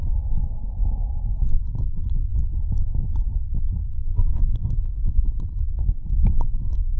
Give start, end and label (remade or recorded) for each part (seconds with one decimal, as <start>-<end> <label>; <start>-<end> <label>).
0.0-4.0 recorded; 4.0-5.0 remade; 5.0-5.7 recorded; 5.7-6.4 remade; 6.4-7.0 recorded